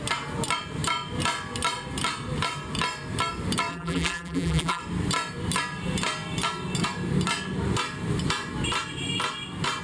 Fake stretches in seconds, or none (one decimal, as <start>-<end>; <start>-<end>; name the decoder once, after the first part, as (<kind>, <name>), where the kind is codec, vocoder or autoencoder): 3.7-4.8 (vocoder, BigVGAN v2)